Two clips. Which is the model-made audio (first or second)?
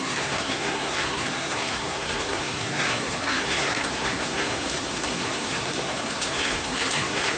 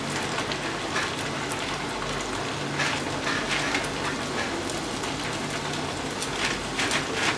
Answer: first